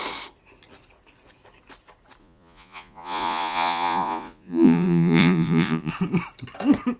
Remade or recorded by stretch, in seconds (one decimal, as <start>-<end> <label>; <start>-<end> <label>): 0.0-2.2 recorded; 2.2-5.9 remade; 5.9-7.0 recorded